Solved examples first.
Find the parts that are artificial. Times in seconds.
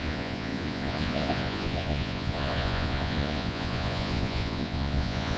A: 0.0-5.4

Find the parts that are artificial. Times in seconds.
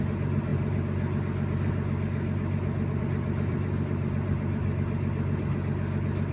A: none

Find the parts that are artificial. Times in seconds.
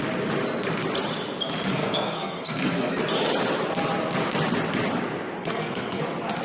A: 1.7-3.0; 5.4-6.0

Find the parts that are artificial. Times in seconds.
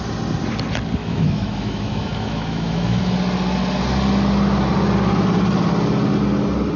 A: 1.0-3.0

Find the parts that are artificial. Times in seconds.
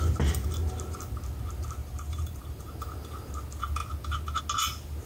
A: 1.8-2.8